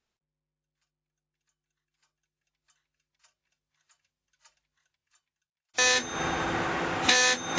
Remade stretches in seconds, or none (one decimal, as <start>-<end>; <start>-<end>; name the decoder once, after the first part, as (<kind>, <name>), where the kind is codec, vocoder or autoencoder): none